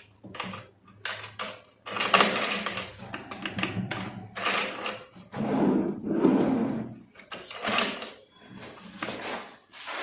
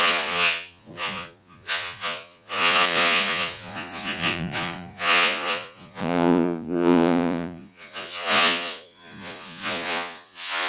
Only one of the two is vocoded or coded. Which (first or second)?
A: second